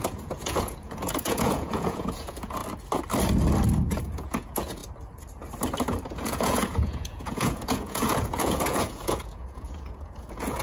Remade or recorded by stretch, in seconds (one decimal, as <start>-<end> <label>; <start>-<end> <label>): 0.0-2.6 remade; 2.6-4.0 recorded; 4.0-4.8 remade; 4.8-6.1 recorded; 6.1-10.6 remade